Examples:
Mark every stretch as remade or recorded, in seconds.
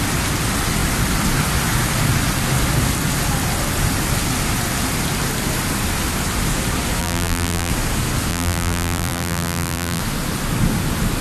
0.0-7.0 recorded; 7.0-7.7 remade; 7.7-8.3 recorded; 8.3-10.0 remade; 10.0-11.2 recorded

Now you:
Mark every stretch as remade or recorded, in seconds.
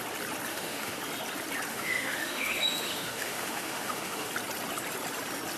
0.0-0.5 recorded; 0.5-1.0 remade; 1.0-1.7 recorded; 1.7-4.3 remade; 4.3-5.6 recorded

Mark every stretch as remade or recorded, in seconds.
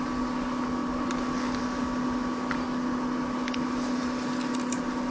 0.0-5.1 recorded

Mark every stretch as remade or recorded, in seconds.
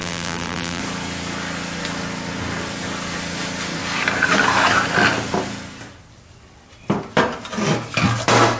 0.0-0.8 remade; 0.8-8.6 recorded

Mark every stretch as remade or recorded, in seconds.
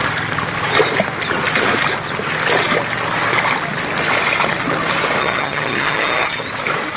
0.0-5.2 recorded; 5.2-6.4 remade; 6.4-7.0 recorded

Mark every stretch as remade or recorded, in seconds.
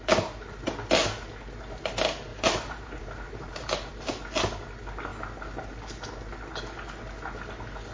0.0-2.3 recorded; 2.3-3.9 remade; 3.9-7.9 recorded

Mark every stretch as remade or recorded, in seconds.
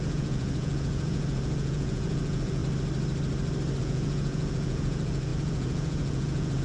0.0-2.6 remade; 2.6-3.8 recorded; 3.8-6.6 remade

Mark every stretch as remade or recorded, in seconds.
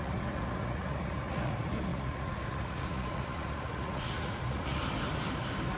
0.0-4.8 remade; 4.8-5.8 recorded